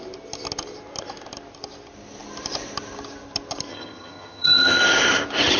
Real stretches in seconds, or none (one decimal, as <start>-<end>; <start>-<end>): 0.0-3.7; 4.8-5.6